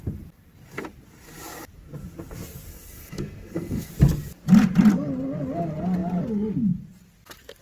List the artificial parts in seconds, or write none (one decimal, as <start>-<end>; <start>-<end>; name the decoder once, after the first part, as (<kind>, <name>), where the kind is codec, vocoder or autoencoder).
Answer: 2.7-3.9 (codec, SNAC)